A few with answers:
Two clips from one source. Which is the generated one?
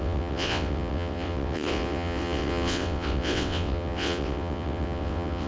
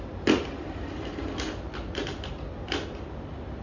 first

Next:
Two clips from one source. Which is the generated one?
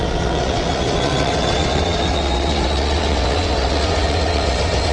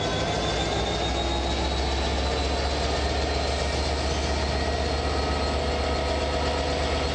first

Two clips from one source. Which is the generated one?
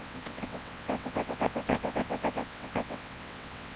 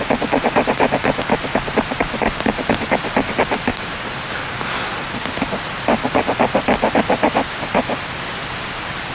first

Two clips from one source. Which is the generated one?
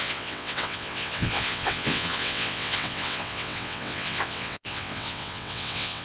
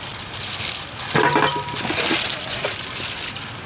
first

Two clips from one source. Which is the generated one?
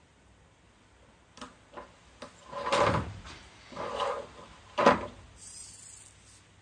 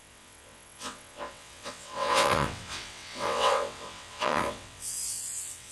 second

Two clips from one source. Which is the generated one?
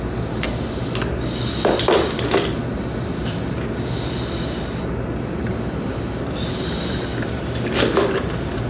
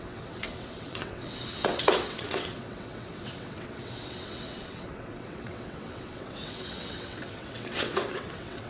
second